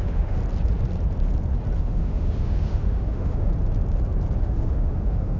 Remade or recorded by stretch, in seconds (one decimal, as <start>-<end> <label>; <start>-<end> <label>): 0.0-0.4 remade; 0.4-1.8 recorded; 1.8-3.5 remade; 3.5-4.4 recorded; 4.4-5.4 remade